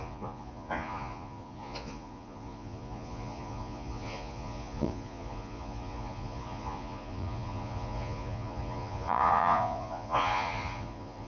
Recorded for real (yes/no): no